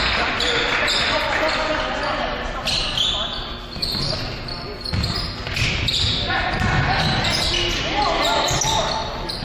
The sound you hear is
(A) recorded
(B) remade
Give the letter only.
A